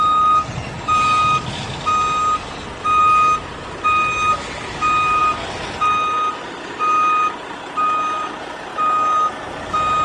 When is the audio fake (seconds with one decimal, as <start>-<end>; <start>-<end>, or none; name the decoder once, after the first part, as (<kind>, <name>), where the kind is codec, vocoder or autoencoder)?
none